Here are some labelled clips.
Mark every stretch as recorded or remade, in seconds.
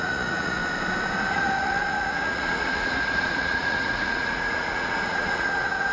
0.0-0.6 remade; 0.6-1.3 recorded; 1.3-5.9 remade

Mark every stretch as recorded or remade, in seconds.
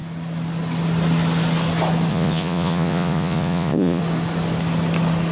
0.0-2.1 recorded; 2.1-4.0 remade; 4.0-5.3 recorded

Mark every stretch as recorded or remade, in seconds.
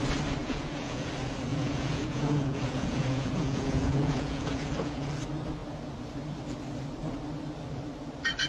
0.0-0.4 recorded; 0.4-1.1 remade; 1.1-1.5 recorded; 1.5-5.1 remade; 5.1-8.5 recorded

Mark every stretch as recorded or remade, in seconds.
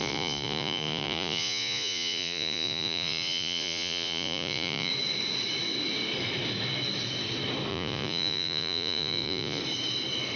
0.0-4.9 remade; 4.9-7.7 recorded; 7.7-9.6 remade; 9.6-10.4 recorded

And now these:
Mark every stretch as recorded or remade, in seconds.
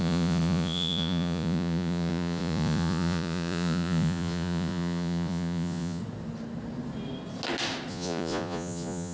0.0-6.0 remade; 6.0-7.9 recorded; 7.9-9.1 remade